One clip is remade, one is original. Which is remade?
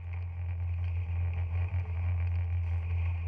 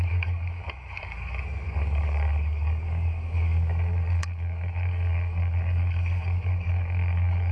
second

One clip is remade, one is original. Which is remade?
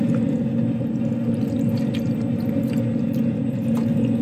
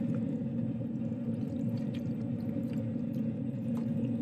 second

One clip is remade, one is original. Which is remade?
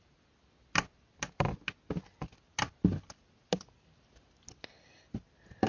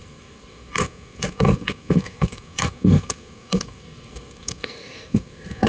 second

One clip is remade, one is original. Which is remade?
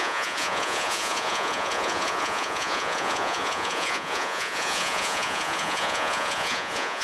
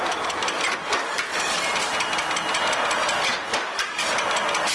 first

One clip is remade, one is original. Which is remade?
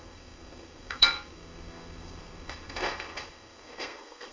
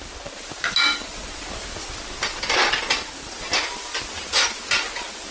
first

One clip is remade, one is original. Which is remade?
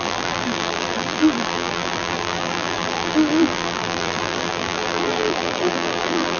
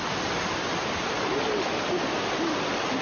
first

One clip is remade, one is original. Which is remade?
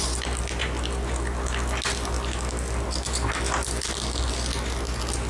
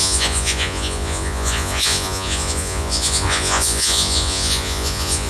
second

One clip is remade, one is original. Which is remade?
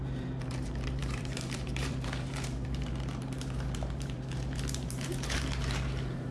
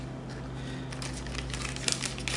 first